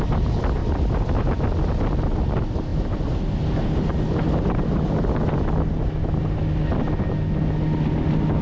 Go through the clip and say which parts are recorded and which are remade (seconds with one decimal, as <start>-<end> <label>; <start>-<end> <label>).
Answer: 0.0-0.6 recorded; 0.6-1.4 remade; 1.4-8.4 recorded